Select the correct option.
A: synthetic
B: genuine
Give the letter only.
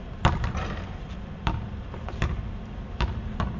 A